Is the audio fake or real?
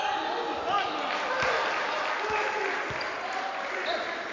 real